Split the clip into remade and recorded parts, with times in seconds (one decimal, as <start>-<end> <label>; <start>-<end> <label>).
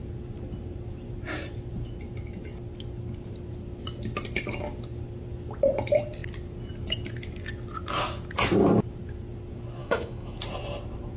0.0-9.8 recorded; 9.8-10.4 remade; 10.4-11.2 recorded